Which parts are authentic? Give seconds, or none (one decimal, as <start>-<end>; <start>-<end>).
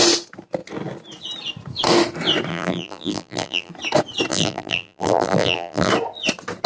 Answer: 0.0-2.5; 3.7-4.3; 5.9-6.7